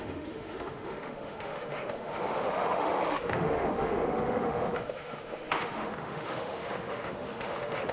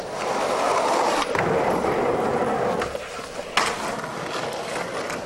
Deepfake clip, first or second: first